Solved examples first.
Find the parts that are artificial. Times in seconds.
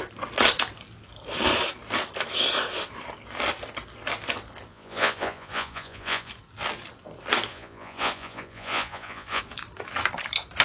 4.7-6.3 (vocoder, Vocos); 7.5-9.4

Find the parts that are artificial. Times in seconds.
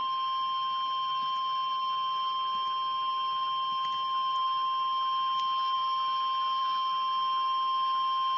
none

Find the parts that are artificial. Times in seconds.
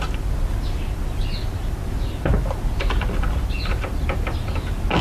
none